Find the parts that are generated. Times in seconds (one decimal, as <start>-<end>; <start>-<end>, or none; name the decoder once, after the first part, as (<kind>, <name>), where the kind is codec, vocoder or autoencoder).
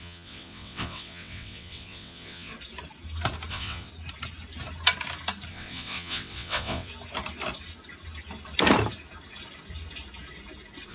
0.0-2.5 (vocoder, WaveNeXt); 3.5-3.9; 5.5-6.9